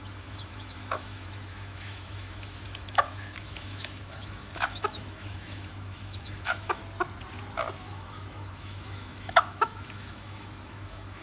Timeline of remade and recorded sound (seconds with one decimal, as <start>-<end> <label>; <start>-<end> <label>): 0.0-6.8 remade; 6.8-7.8 recorded; 7.8-11.2 remade